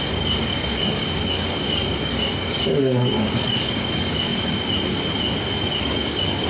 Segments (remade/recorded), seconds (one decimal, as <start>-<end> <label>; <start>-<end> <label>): 0.0-4.3 remade; 4.3-5.8 recorded; 5.8-6.5 remade